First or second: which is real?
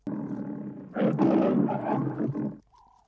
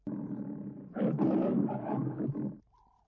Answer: first